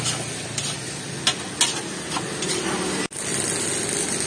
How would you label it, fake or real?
real